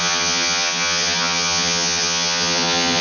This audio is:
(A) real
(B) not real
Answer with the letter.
B